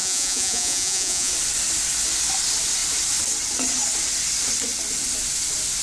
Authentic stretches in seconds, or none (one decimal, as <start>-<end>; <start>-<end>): 1.3-5.8